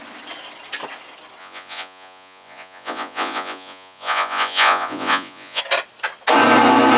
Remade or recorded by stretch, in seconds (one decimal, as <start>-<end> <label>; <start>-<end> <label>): 0.0-1.4 recorded; 1.4-5.6 remade; 5.6-7.0 recorded